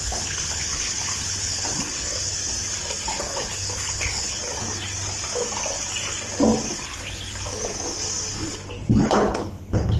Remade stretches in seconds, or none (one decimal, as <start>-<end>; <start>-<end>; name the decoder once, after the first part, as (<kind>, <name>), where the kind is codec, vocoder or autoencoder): 0.0-2.4 (codec, HILCodec); 3.2-4.4; 8.9-10.0